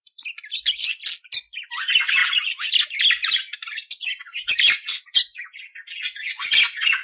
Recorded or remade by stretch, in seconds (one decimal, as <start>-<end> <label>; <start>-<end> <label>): 0.0-2.2 recorded; 2.2-2.8 remade; 2.8-3.2 recorded; 3.2-4.0 remade; 4.0-7.0 recorded